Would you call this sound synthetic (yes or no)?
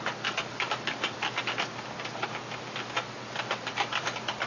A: no